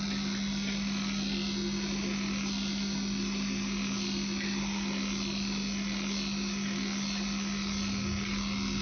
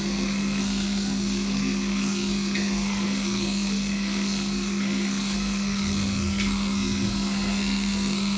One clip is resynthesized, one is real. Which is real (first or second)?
first